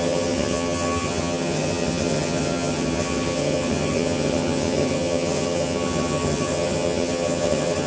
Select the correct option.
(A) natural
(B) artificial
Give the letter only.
B